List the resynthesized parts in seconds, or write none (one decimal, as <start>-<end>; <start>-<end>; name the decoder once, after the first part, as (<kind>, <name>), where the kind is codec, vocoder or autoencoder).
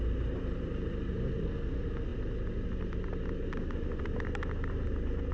none